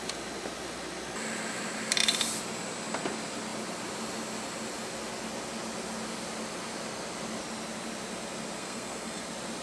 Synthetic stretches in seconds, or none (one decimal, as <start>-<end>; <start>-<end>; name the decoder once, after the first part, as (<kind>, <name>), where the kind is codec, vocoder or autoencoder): 8.6-9.2 (codec, SNAC)